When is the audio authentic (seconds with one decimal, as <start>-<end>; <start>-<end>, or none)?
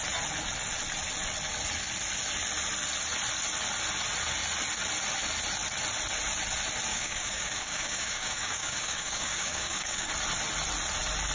0.0-6.9; 10.1-11.3